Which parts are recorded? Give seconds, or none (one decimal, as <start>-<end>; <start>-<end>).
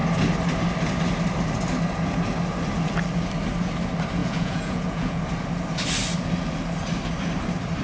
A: 0.0-4.2; 5.2-7.8